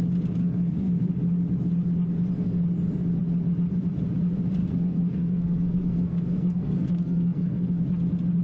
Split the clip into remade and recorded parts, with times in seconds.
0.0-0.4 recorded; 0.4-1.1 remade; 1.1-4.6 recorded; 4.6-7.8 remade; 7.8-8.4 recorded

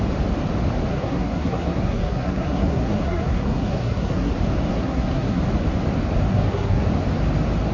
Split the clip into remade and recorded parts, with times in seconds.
0.0-0.9 recorded; 0.9-4.3 remade; 4.3-4.7 recorded; 4.7-5.4 remade; 5.4-6.3 recorded; 6.3-6.9 remade; 6.9-7.7 recorded

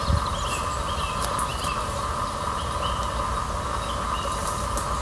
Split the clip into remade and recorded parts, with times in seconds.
0.0-5.0 recorded

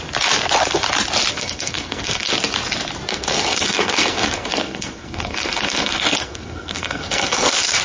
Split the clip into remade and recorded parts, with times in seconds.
0.0-1.3 recorded; 1.3-2.3 remade; 2.3-3.1 recorded; 3.1-7.8 remade

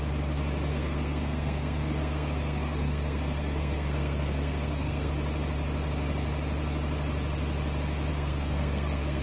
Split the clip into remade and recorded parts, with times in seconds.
0.0-0.7 recorded; 0.7-5.1 remade; 5.1-8.1 recorded; 8.1-9.2 remade

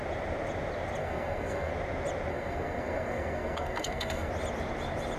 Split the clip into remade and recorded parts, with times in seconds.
0.0-1.0 recorded; 1.0-1.7 remade; 1.7-2.3 recorded; 2.3-4.3 remade; 4.3-5.2 recorded

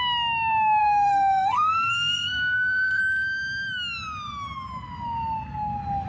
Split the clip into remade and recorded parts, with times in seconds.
0.0-0.8 recorded; 0.8-3.0 remade; 3.0-6.1 recorded

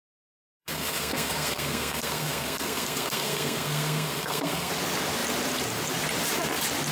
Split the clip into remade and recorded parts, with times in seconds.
0.0-0.6 recorded; 0.6-4.7 remade; 4.7-6.9 recorded